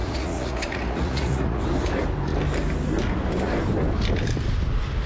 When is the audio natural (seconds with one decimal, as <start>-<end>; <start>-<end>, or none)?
1.6-5.1